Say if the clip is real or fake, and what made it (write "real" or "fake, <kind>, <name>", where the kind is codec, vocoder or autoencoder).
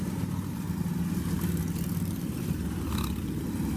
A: real